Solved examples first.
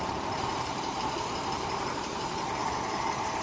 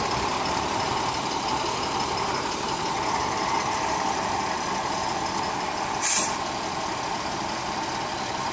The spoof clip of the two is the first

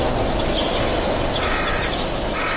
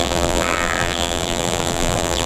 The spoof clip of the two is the second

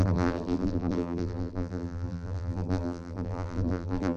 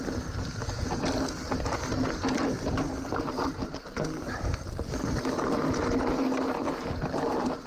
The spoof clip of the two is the first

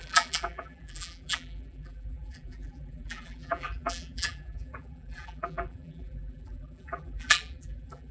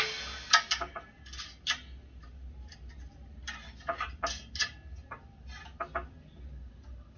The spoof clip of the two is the first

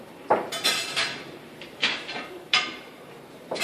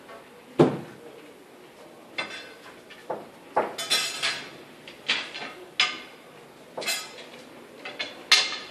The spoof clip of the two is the first